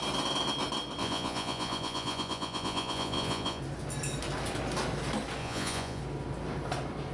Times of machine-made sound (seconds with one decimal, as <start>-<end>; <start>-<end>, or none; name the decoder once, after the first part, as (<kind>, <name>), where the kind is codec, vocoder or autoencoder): 1.0-3.6 (vocoder, Vocos); 5.4-6.0